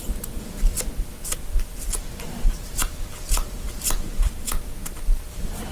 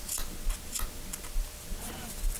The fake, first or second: first